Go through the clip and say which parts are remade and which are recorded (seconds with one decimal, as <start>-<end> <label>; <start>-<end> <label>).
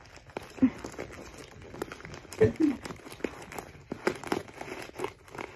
0.0-5.6 recorded